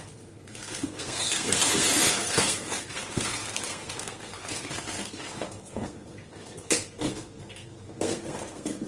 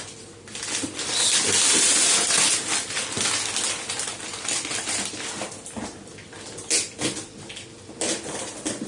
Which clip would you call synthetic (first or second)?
first